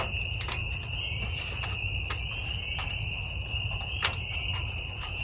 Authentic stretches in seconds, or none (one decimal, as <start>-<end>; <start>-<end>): 0.6-3.7